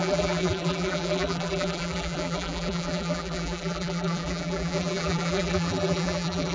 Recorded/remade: remade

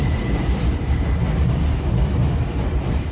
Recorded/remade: recorded